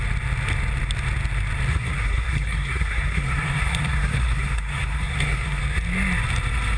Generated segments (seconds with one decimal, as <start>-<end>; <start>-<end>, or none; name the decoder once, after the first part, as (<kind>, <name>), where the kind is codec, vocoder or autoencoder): 1.7-5.6 (codec, SNAC)